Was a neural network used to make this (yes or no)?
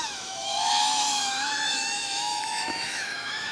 yes